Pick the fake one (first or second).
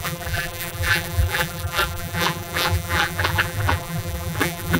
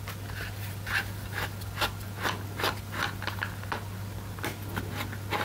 first